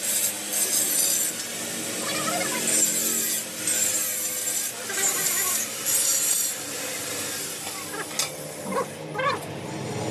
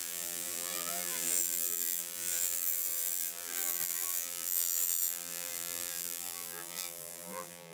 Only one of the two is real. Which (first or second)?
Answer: first